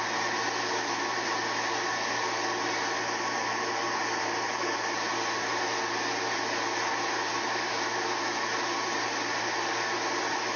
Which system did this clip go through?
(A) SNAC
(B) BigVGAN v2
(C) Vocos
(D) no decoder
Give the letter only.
D